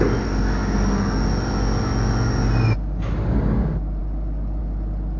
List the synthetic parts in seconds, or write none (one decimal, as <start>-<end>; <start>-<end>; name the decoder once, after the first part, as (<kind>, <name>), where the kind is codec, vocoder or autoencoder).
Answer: none